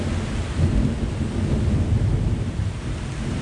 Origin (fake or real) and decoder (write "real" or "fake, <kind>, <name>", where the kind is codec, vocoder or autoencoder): real